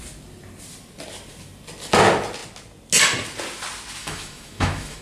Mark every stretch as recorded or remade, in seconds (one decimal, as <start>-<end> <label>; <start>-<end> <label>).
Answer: 0.0-4.0 recorded; 4.0-5.0 remade